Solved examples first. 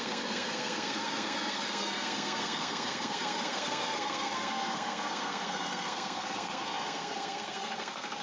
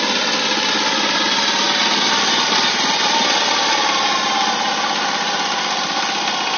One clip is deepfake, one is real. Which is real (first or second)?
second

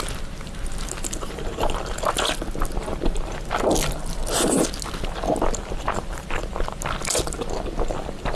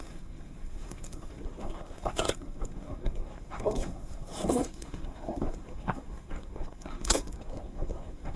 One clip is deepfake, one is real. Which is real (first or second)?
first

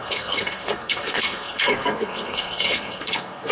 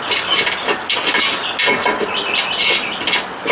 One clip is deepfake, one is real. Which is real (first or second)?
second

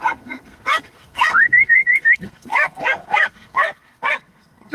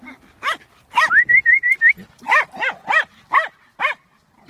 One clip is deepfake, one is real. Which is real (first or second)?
second